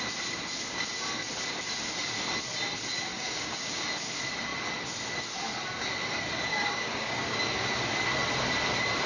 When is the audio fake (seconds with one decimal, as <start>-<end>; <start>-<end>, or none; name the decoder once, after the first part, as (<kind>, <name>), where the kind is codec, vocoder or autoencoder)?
3.1-3.8 (codec, DAC); 6.5-7.4